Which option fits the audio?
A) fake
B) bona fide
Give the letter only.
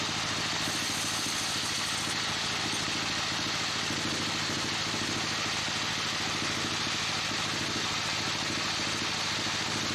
B